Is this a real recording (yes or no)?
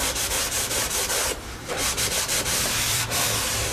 no